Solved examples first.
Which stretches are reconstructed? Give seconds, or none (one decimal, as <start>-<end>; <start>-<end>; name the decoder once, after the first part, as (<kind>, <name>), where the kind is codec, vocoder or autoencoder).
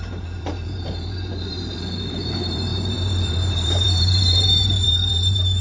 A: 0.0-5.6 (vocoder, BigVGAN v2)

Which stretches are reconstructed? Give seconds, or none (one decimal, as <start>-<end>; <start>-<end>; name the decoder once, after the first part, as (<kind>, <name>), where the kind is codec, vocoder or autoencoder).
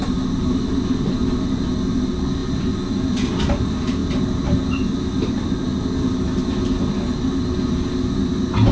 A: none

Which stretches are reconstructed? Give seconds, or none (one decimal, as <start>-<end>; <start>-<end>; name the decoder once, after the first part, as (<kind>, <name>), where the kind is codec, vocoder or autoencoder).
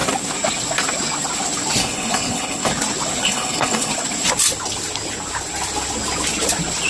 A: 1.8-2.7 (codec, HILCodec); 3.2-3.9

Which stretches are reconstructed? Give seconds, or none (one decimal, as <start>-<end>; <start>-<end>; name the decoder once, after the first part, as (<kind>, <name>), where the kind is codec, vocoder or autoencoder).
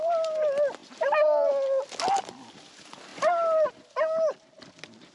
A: none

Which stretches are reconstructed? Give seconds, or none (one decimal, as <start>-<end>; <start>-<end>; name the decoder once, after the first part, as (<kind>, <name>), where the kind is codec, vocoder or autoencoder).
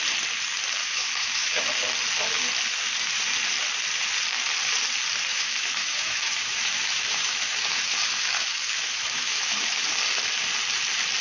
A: 0.8-1.6 (autoencoder, DAC-VAE); 5.3-9.9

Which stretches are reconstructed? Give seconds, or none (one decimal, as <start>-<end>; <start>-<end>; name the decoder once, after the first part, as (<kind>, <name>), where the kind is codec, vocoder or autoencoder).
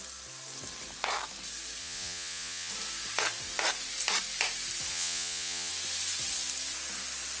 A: 1.8-2.7 (vocoder, Vocos); 4.9-5.7